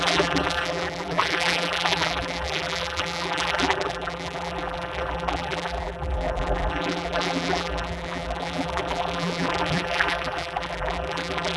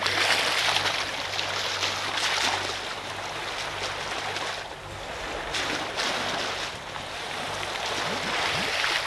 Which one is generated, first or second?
first